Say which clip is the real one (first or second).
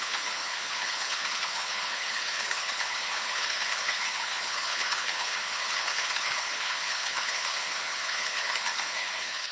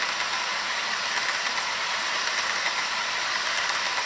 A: second